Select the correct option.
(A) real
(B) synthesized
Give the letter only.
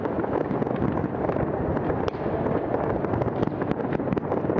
A